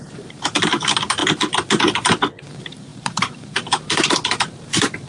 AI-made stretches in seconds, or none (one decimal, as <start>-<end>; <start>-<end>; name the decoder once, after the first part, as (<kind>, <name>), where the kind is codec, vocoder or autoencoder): 0.0-1.2 (vocoder, BigVGAN v2); 2.4-5.1

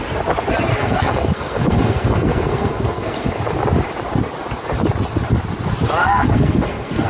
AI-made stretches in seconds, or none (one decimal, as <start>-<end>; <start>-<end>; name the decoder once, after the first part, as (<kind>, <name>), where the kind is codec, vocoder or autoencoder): 0.7-3.4 (codec, SNAC); 6.0-7.1

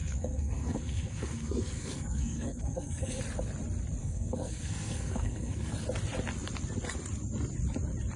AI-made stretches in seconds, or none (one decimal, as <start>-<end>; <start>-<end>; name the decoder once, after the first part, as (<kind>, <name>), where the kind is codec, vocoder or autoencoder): 0.0-3.2 (codec, SNAC); 4.0-5.7